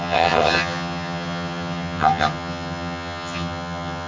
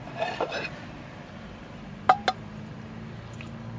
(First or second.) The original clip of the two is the second